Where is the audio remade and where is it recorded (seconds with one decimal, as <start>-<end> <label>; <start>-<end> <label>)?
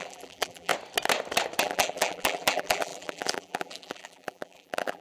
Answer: 0.0-0.7 remade; 0.7-1.6 recorded; 1.6-5.0 remade